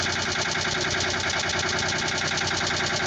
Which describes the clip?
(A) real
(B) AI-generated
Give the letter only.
A